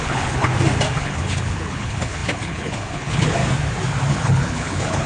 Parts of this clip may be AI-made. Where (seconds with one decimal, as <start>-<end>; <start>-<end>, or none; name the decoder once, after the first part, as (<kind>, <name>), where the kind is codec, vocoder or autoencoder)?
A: 0.0-0.5 (codec, HILCodec); 1.0-3.4; 4.1-5.1